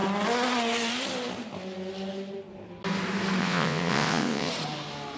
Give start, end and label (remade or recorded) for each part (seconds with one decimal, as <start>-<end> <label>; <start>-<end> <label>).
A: 0.0-3.4 recorded; 3.4-4.5 remade; 4.5-5.2 recorded